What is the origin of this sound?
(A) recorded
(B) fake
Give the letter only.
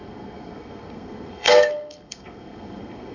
B